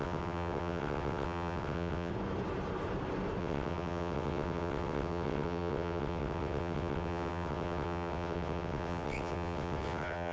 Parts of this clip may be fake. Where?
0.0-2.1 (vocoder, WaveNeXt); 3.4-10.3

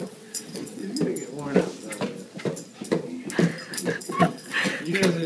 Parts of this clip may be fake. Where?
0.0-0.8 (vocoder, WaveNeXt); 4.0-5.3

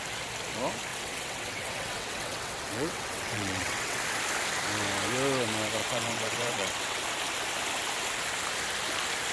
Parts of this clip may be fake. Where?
0.9-4.0 (vocoder, WaveNeXt); 5.8-7.0

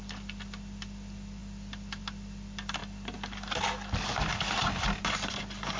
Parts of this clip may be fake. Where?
none

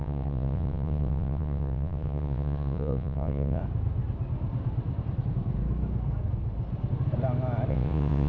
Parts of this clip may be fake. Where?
0.0-3.6 (vocoder, WaveNeXt); 7.7-8.3

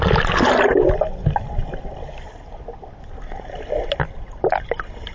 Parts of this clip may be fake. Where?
none

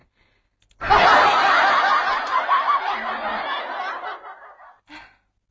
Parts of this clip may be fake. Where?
none

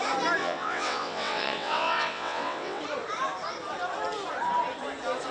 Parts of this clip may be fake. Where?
0.4-2.8 (vocoder, WaveNeXt)